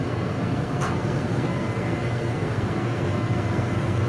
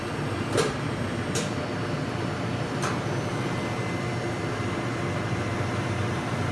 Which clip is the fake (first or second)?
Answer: first